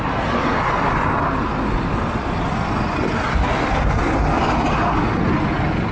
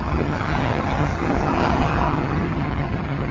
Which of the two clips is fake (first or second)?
second